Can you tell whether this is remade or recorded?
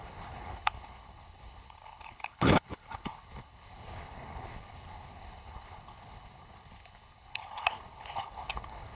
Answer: remade